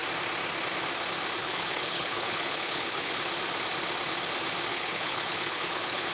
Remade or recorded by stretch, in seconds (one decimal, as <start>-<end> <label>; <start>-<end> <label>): 0.0-1.4 recorded; 1.4-3.1 remade; 3.1-4.7 recorded; 4.7-6.1 remade